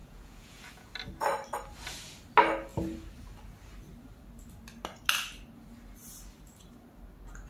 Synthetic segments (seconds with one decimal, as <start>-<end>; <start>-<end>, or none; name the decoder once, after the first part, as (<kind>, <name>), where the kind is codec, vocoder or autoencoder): 0.0-0.9 (vocoder, Vocos)